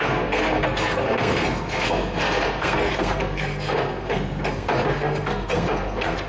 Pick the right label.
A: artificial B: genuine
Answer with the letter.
A